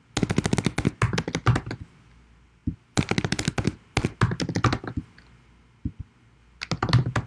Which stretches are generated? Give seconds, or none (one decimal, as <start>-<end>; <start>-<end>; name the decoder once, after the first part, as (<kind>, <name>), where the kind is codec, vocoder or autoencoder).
none